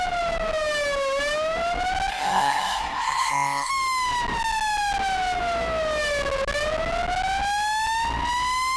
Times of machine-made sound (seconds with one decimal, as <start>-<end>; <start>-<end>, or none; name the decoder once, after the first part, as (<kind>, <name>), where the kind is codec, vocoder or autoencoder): 2.1-3.7 (codec, SNAC)